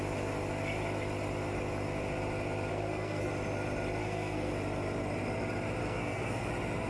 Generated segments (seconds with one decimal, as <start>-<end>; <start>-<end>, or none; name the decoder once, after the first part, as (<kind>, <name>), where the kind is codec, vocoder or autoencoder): 2.7-3.3 (codec, SNAC); 4.0-4.5; 5.8-6.5